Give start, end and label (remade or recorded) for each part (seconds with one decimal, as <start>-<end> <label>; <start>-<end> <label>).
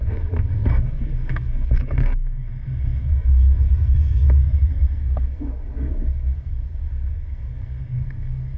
0.0-8.6 remade